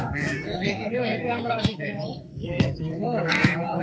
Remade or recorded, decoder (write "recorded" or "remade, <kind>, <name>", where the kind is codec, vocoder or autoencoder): remade, codec, SNAC